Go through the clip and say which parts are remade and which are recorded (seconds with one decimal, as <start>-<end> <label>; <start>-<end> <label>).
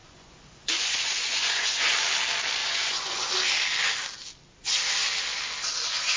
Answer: 0.0-1.9 remade; 1.9-2.6 recorded; 2.6-3.3 remade; 3.3-6.2 recorded